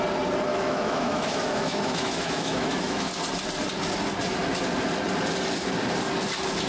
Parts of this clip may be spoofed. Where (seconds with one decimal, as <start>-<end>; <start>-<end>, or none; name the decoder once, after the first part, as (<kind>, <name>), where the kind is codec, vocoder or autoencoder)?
0.5-3.1 (autoencoder, DAC-VAE)